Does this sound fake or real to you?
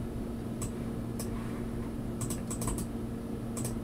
fake